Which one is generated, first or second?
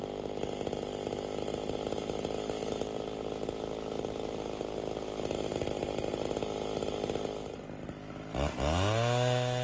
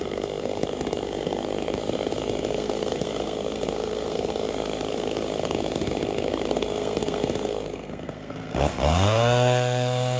second